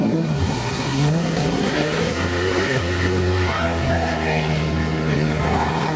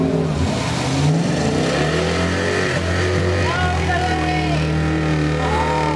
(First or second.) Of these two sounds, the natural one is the second